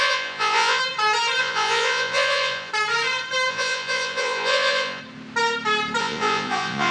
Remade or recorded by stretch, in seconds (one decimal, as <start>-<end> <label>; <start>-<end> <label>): 0.0-0.8 remade; 0.8-1.4 recorded; 1.4-2.7 remade; 2.7-3.5 recorded; 3.5-5.0 remade; 5.0-6.0 recorded; 6.0-6.9 remade